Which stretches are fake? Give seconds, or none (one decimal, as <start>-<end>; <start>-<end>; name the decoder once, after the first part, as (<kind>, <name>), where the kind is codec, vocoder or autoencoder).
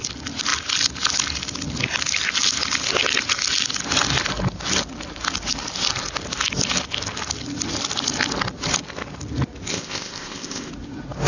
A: 9.7-10.7 (codec, ZipCodec)